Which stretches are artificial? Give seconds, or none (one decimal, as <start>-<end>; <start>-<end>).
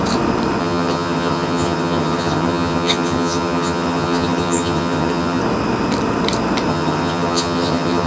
0.6-5.4; 6.7-8.1